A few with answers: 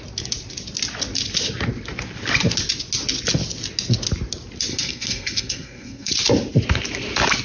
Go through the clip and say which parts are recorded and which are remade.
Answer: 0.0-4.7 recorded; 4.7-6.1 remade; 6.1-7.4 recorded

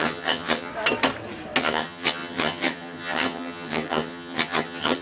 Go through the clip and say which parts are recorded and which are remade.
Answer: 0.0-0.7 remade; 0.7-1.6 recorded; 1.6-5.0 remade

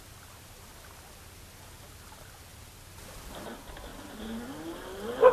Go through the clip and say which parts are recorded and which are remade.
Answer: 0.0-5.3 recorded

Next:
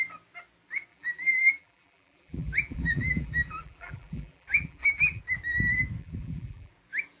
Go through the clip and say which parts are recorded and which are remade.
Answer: 0.0-0.9 recorded; 0.9-5.2 remade; 5.2-6.0 recorded; 6.0-6.7 remade; 6.7-7.2 recorded

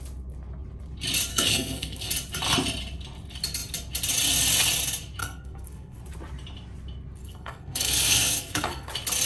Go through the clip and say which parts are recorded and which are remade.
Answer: 0.0-1.3 recorded; 1.3-2.1 remade; 2.1-5.2 recorded; 5.2-6.0 remade; 6.0-7.2 recorded; 7.2-8.9 remade; 8.9-9.3 recorded

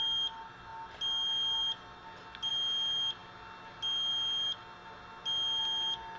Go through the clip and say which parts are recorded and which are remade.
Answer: 0.0-6.2 recorded

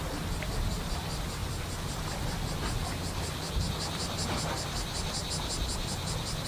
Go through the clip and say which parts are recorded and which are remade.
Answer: 0.0-6.5 recorded

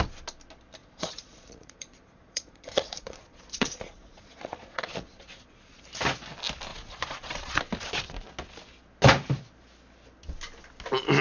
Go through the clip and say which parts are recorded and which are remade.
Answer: 0.0-0.8 recorded; 0.8-5.8 remade; 5.8-6.7 recorded; 6.7-7.6 remade; 7.6-11.2 recorded